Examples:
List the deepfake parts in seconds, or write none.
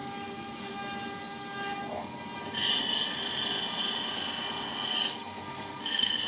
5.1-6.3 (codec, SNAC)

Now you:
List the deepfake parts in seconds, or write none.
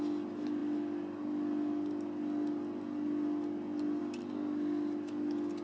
none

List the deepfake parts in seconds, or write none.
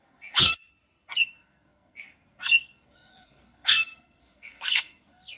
0.0-0.5 (codec, SNAC); 1.1-5.4